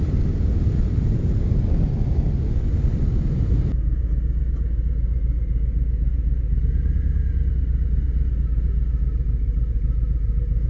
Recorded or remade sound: recorded